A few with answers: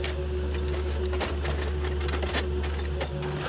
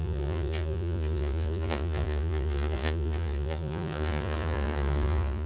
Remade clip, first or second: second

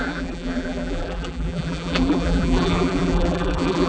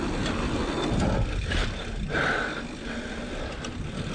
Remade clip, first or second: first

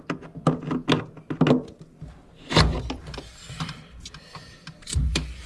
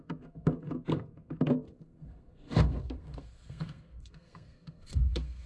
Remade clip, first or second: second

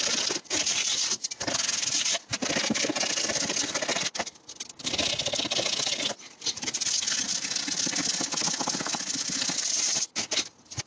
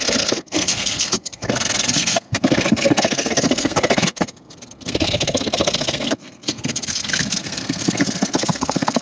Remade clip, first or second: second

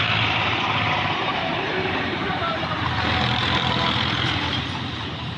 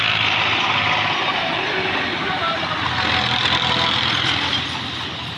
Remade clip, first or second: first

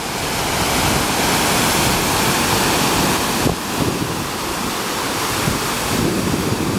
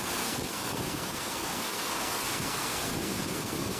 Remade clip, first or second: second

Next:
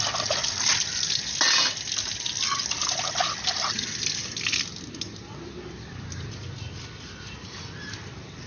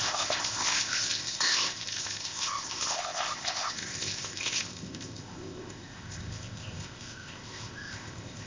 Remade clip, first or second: second